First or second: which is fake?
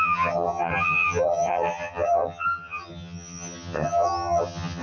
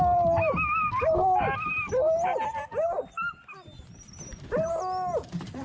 first